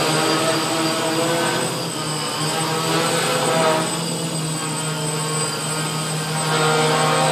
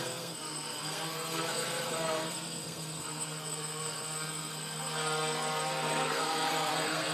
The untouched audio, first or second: first